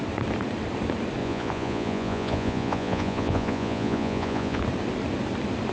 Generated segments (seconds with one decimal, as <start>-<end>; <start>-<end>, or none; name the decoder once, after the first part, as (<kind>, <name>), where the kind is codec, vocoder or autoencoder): 1.2-4.6 (vocoder, Vocos)